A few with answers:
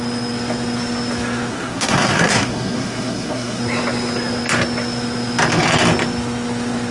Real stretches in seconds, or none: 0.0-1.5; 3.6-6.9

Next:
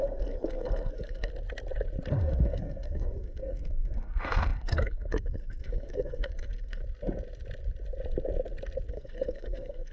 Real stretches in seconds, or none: 1.3-2.1; 6.8-8.9

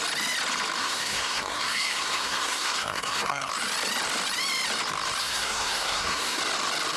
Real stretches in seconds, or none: 0.0-0.8; 3.5-5.2; 6.4-7.0

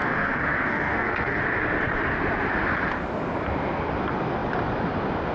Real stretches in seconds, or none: 1.4-5.3

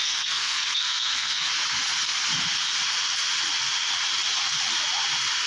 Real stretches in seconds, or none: 1.5-5.5

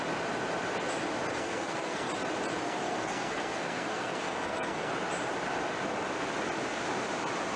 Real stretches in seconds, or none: 0.0-1.3; 2.1-2.6; 4.9-7.6

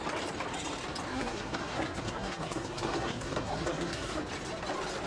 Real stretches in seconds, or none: 0.0-1.1; 4.2-5.1

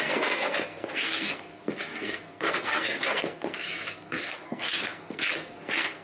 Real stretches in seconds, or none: none